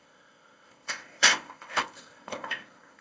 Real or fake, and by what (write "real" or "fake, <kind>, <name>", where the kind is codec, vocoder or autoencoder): fake, codec, ZipCodec